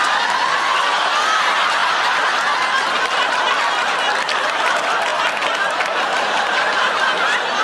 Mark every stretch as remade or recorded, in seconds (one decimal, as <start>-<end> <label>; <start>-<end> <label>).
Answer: 0.0-7.6 recorded